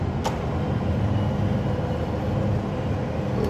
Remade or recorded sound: recorded